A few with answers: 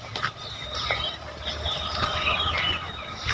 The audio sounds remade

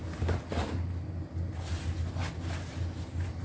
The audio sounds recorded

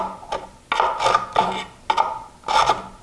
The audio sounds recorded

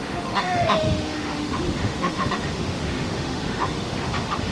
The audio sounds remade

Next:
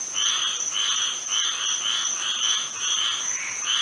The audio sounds recorded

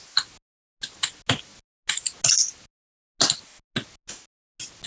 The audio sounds recorded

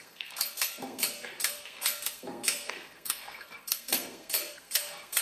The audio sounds remade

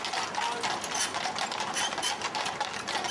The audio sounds recorded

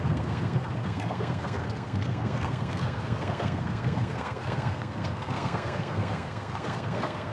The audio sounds remade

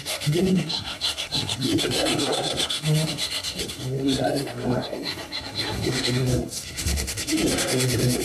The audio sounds remade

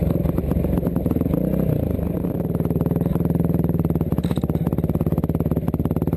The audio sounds recorded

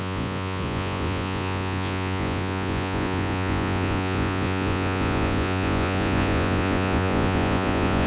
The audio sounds remade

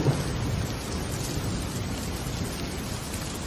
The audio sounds recorded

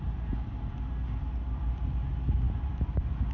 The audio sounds recorded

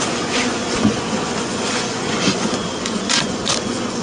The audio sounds remade